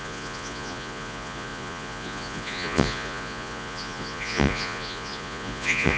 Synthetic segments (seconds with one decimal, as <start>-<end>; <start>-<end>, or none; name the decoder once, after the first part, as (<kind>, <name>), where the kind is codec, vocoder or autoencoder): 0.0-6.0 (vocoder, Vocos)